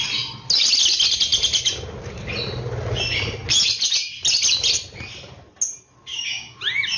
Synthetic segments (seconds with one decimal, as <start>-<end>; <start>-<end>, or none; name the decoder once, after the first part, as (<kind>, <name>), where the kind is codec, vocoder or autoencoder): 6.1-6.6 (codec, DAC)